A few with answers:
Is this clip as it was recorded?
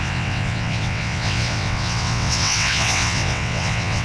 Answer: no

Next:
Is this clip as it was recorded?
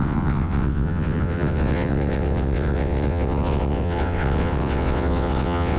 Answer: no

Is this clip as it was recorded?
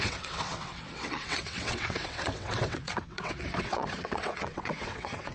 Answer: no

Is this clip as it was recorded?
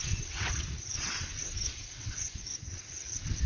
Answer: no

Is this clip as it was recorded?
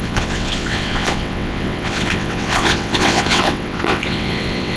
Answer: no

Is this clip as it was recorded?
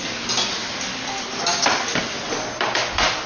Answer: yes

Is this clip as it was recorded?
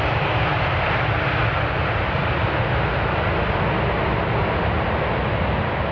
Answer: yes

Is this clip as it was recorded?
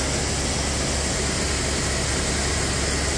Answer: yes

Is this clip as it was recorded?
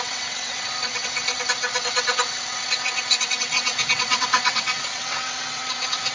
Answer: no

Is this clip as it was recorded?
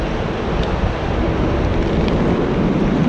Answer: yes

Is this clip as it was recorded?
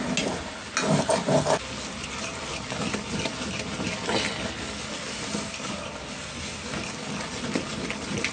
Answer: yes